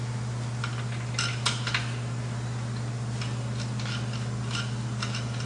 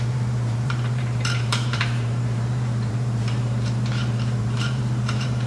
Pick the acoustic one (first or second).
first